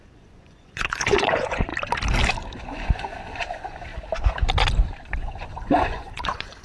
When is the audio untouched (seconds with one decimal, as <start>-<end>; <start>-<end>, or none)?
1.7-2.6; 3.9-5.2